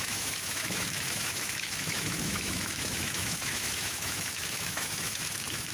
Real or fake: fake